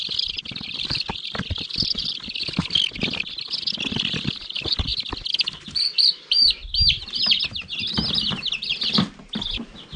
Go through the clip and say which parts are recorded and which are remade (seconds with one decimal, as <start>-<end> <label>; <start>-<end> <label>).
0.0-4.9 remade; 4.9-5.7 recorded; 5.7-6.6 remade; 6.6-7.4 recorded; 7.4-10.0 remade